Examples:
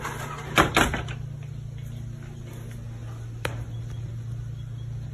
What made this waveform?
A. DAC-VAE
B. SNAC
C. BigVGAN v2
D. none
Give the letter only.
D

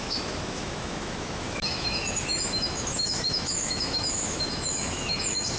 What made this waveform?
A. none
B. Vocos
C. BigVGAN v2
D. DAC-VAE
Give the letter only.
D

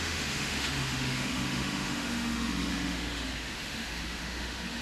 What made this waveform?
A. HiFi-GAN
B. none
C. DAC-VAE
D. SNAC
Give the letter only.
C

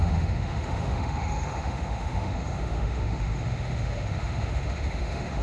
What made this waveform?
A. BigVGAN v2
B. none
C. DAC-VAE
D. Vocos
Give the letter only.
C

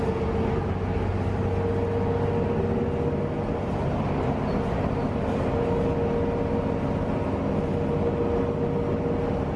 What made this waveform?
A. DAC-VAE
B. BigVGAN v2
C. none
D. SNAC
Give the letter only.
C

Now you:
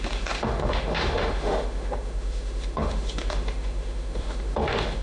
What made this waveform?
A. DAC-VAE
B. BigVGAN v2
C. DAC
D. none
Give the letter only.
A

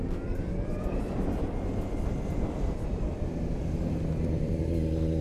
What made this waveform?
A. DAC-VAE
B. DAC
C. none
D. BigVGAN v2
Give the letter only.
C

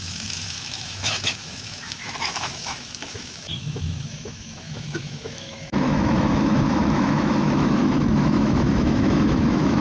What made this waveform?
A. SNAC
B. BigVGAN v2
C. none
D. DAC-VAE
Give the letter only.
D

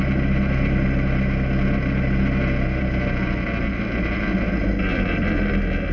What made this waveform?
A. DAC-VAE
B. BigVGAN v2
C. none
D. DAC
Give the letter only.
C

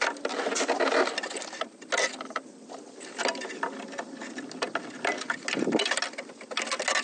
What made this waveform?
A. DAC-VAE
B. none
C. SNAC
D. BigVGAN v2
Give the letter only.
B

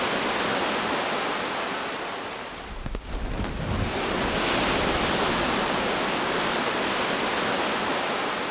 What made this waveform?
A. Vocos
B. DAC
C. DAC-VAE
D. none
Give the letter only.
D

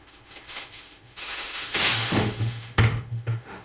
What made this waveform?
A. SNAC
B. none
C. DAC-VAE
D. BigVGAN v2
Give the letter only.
C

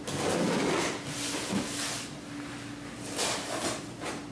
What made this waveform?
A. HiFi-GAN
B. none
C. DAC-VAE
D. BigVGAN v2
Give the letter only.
B